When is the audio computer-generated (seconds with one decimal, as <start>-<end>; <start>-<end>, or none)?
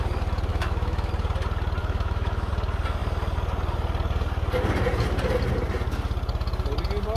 0.5-1.1; 1.8-2.5